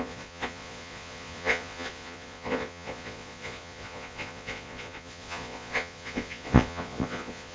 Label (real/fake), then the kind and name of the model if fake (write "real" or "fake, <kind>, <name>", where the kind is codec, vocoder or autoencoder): fake, vocoder, Vocos